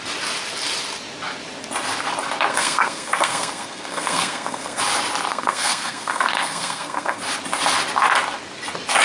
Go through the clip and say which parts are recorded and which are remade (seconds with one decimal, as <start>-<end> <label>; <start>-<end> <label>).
0.0-2.5 recorded; 2.5-4.8 remade; 4.8-5.3 recorded; 5.3-7.2 remade; 7.2-9.0 recorded